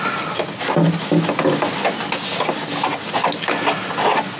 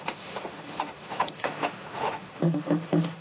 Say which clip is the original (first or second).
first